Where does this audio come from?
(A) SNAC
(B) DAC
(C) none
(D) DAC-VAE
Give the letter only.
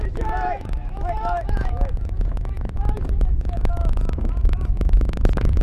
D